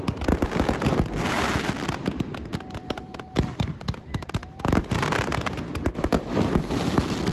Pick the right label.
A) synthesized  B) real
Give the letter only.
B